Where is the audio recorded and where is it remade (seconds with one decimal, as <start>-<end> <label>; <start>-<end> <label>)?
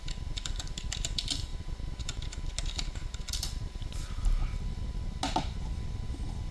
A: 0.0-6.5 recorded